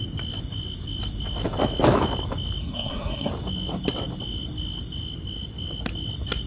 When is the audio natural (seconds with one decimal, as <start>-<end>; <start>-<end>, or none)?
0.0-2.6; 3.3-6.5